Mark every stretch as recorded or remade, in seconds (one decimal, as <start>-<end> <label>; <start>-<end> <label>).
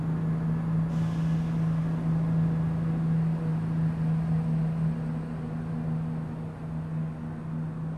0.0-8.0 recorded